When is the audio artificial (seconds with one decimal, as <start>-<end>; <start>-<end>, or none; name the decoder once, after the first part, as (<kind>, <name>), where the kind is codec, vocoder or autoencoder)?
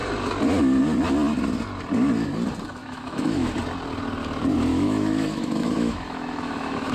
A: 2.8-3.6 (autoencoder, DAC-VAE); 4.7-6.9